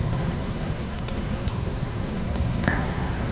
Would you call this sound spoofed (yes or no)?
yes